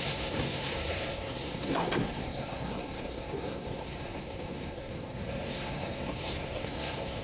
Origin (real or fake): fake